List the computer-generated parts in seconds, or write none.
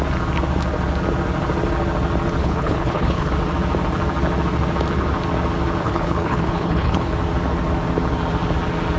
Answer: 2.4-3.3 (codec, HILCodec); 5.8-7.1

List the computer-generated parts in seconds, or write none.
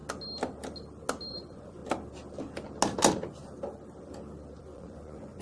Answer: 1.3-1.8 (vocoder, Vocos); 4.6-5.4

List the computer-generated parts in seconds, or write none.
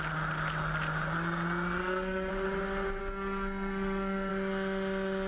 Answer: 1.8-2.3 (codec, SNAC); 3.0-4.3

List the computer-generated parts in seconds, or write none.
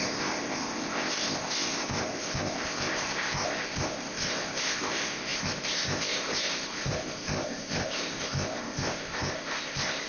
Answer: 0.0-10.1 (codec, ZipCodec)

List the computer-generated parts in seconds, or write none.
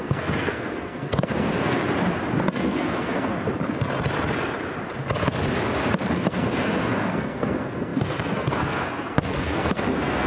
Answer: 0.0-1.8 (codec, SNAC); 2.6-3.3; 6.1-10.3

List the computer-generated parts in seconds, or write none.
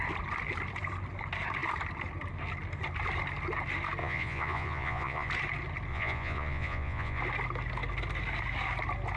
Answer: 4.0-5.3 (vocoder, Vocos); 5.9-7.2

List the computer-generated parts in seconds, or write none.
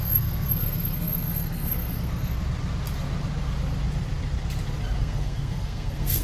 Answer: 0.0-2.3 (codec, SNAC); 5.0-6.2